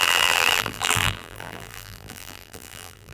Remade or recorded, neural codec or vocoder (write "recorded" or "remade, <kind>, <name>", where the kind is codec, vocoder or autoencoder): remade, vocoder, BigVGAN v2